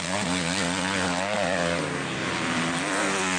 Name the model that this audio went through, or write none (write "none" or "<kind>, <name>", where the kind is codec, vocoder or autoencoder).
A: none